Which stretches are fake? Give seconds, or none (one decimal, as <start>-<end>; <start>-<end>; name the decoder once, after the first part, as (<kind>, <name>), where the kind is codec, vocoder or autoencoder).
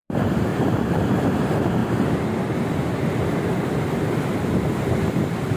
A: 0.0-1.8 (vocoder, BigVGAN v2); 5.1-5.6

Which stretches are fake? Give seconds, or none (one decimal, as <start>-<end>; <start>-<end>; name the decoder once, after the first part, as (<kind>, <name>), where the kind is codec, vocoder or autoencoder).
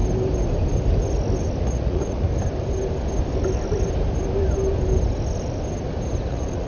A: 1.6-2.3 (vocoder, Vocos); 6.3-6.7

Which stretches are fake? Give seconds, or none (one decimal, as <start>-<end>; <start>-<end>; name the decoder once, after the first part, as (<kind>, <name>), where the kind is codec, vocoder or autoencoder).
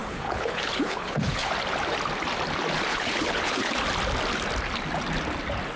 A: 0.0-1.5 (codec, HILCodec); 2.9-3.7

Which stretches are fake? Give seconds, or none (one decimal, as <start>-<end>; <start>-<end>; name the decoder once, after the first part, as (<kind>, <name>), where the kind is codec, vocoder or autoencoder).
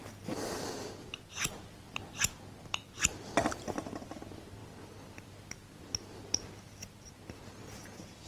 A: none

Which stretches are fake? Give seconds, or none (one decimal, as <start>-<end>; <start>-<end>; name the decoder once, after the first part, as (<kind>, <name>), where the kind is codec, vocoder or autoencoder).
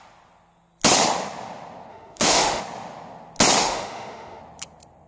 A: 1.9-2.6 (autoencoder, DAC-VAE); 3.6-4.4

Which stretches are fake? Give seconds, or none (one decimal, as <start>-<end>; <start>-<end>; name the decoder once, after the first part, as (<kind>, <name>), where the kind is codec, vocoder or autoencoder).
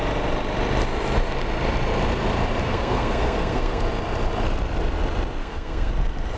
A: 2.6-3.8 (codec, SNAC); 5.4-5.9